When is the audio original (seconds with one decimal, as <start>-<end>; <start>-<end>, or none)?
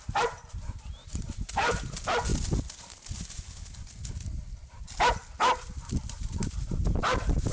2.3-6.1